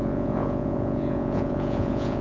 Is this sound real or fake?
fake